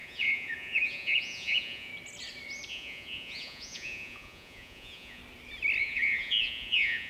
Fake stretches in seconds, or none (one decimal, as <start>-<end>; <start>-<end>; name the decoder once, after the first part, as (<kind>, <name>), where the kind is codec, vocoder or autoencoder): 0.0-1.9 (vocoder, Vocos); 2.7-5.2; 5.8-7.1

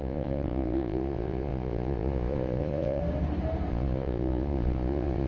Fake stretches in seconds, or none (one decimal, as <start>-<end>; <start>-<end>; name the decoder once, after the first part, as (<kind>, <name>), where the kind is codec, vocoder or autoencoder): 0.0-3.0 (vocoder, Vocos); 3.7-5.3

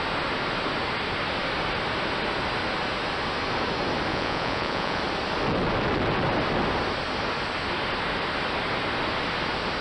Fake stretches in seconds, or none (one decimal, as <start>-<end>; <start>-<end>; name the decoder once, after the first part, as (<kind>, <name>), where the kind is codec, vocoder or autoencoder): 4.1-5.0 (vocoder, Vocos)